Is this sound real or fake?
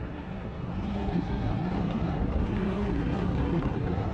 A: fake